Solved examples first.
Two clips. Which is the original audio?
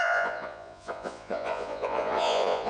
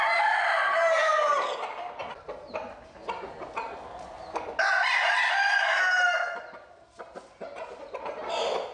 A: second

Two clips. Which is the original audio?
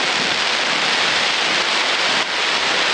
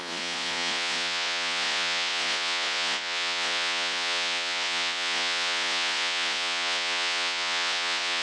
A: first